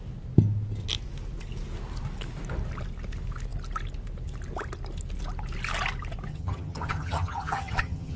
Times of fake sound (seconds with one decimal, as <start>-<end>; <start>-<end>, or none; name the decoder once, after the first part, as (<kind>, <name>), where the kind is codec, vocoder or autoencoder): 6.3-8.2 (vocoder, HiFi-GAN)